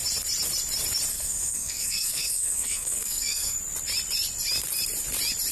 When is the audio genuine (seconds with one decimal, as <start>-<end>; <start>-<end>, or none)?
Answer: 0.0-1.1; 3.6-5.5